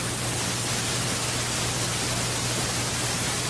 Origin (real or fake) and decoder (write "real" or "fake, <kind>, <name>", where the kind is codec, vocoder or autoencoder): real